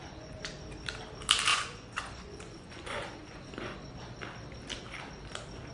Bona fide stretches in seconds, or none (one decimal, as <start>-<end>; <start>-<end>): 0.5-1.5; 3.9-5.7